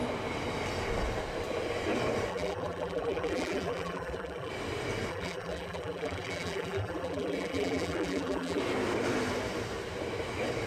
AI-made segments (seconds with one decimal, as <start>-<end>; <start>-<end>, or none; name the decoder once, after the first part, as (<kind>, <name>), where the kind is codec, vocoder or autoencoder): 2.3-4.5 (vocoder, BigVGAN v2); 5.1-8.6